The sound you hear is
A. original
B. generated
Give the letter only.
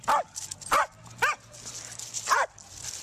A